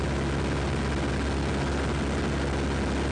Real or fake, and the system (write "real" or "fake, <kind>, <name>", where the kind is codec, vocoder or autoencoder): real